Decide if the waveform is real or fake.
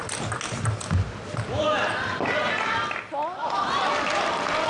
real